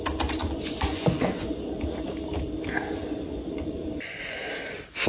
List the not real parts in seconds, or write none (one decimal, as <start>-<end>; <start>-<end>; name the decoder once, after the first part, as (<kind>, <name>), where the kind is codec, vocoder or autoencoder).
0.4-2.1 (vocoder, Vocos); 3.0-4.4